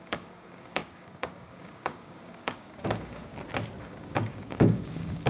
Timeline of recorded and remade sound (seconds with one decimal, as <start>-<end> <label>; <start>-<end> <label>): 0.0-3.3 remade; 3.3-3.8 recorded; 3.8-5.3 remade